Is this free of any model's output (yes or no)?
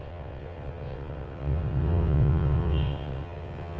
no